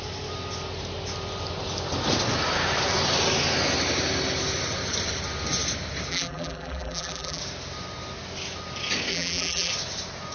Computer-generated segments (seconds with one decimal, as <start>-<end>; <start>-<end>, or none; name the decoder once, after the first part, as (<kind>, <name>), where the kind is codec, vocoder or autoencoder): 6.1-7.4 (vocoder, BigVGAN v2); 9.1-9.7